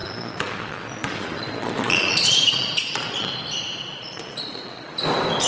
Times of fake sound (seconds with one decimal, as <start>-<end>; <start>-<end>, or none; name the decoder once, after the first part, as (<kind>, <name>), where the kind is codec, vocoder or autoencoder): 0.0-3.3 (vocoder, Vocos); 3.9-4.9